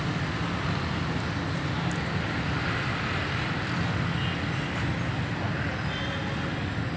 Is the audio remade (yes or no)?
no